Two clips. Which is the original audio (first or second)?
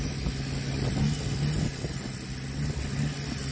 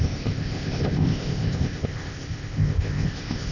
first